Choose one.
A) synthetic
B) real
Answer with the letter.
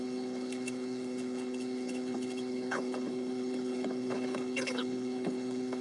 A